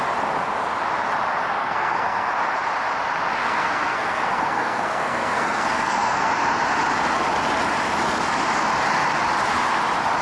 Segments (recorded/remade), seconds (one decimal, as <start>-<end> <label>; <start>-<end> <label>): 0.0-1.6 recorded; 1.6-2.3 remade; 2.3-3.4 recorded; 3.4-6.3 remade; 6.3-10.2 recorded